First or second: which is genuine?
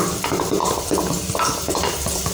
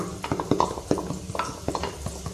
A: second